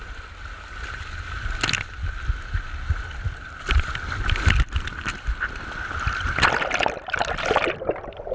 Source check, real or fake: real